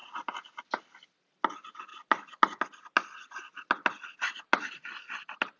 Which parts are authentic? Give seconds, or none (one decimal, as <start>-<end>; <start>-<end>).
0.0-5.6